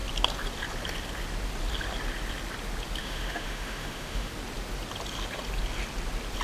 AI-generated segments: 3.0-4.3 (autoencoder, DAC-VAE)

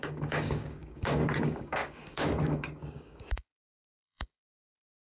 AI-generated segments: 0.0-5.0 (codec, DAC)

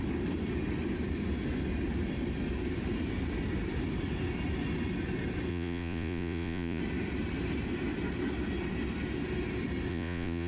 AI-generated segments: 5.5-6.8 (vocoder, Vocos); 9.9-10.5

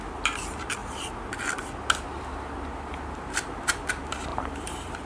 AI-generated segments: 4.3-5.1 (vocoder, BigVGAN v2)

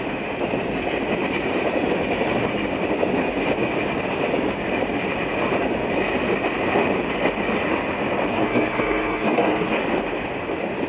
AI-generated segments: 8.3-9.8 (codec, SNAC)